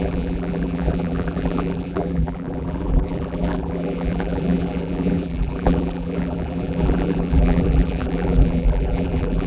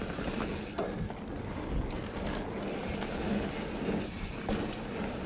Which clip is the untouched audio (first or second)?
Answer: second